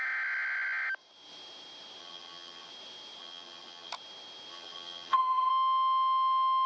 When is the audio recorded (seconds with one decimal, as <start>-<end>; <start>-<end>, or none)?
0.0-2.0; 2.7-3.2; 3.9-4.5; 5.5-6.7